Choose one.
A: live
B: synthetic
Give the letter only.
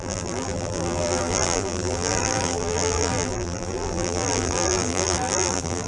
B